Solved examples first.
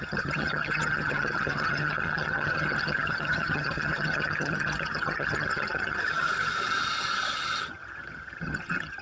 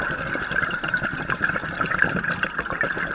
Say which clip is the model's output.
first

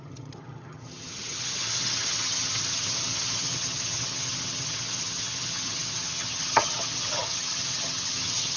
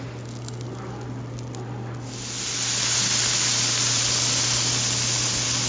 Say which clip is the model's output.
first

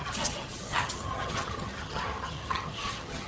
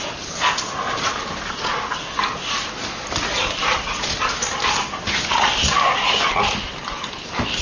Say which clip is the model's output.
first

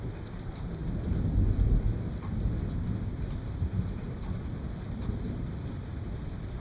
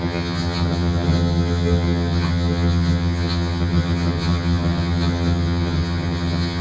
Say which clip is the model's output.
second